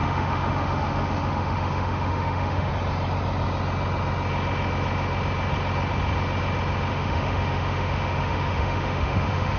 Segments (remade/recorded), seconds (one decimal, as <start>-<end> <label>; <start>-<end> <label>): 0.0-2.7 remade; 2.7-6.9 recorded; 6.9-9.6 remade